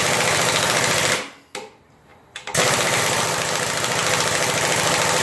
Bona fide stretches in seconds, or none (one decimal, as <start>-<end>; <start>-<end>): 0.0-5.2